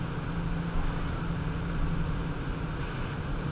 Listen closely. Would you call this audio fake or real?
real